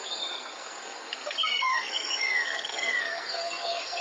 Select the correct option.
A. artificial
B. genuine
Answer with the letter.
A